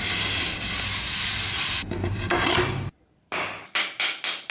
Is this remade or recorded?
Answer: recorded